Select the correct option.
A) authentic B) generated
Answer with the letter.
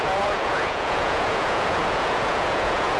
B